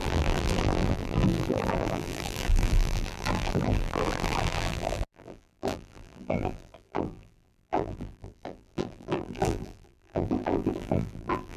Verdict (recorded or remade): remade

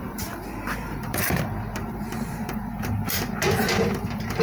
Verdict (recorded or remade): remade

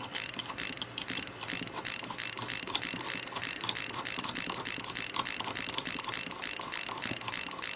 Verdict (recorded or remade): remade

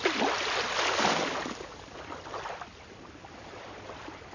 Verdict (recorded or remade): remade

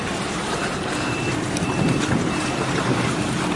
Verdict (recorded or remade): remade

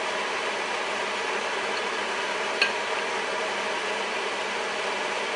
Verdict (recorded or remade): recorded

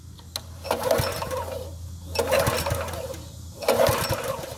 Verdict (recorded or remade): recorded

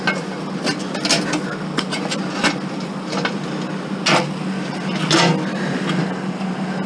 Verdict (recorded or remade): recorded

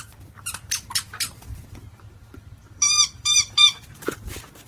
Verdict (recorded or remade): remade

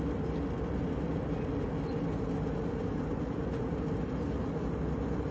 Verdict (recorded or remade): recorded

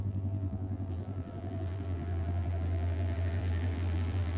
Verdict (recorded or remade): remade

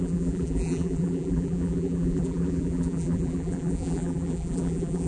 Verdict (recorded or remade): remade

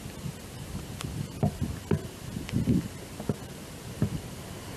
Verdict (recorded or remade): recorded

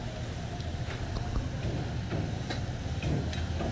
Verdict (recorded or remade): recorded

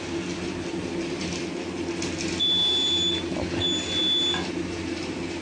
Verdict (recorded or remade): recorded